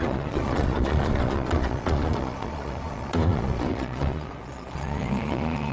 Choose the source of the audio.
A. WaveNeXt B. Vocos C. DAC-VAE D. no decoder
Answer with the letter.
B